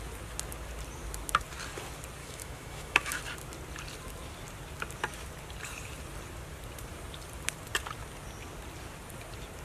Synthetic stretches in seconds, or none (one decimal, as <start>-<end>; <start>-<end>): 2.2-3.2